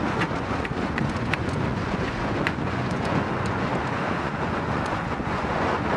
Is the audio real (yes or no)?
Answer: no